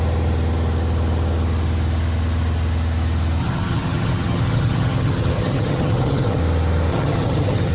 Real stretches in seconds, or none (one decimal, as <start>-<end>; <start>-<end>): 0.0-3.4; 6.4-6.9